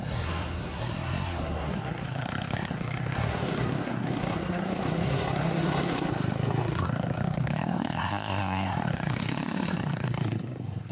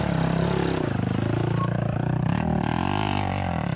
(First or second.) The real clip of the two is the second